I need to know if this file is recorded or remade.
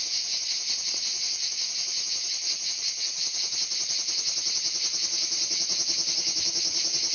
recorded